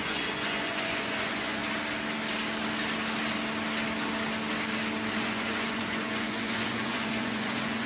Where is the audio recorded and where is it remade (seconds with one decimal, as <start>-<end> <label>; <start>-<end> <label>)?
0.0-1.6 remade; 1.6-5.2 recorded; 5.2-7.9 remade